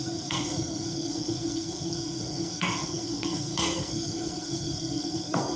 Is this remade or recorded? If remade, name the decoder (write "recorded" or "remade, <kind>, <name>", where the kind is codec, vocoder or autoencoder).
remade, codec, SNAC